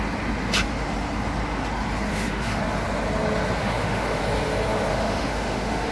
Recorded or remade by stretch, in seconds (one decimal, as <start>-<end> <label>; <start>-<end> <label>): 0.0-2.1 recorded; 2.1-2.6 remade; 2.6-3.6 recorded; 3.6-4.2 remade; 4.2-4.9 recorded; 4.9-5.9 remade